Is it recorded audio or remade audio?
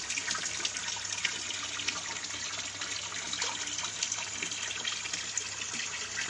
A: recorded